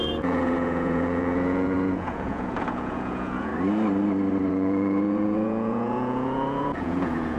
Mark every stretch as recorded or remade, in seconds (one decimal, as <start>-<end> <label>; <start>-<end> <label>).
0.0-3.5 remade; 3.5-4.5 recorded; 4.5-7.4 remade